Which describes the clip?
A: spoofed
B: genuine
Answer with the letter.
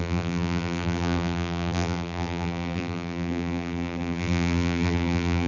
A